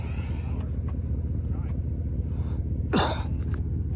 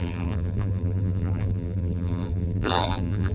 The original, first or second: first